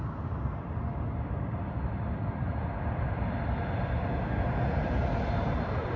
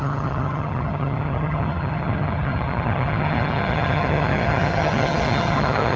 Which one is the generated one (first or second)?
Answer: second